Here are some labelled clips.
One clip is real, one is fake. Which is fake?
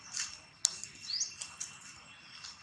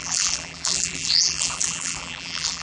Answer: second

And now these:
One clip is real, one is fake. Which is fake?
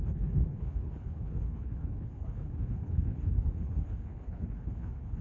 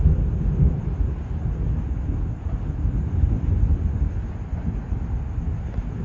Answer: first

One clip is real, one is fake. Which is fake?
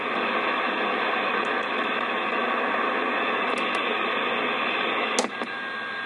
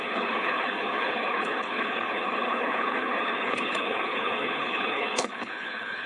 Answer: second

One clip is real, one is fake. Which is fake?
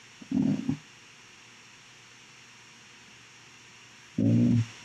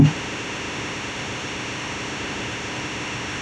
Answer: second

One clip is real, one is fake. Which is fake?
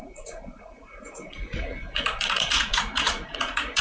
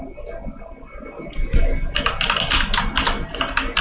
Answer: first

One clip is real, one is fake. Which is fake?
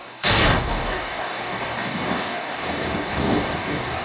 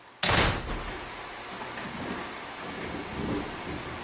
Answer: first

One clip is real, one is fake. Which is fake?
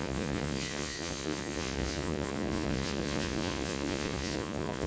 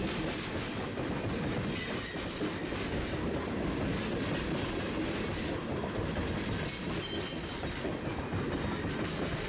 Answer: first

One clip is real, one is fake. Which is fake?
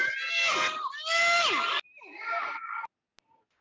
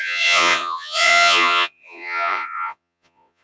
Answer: second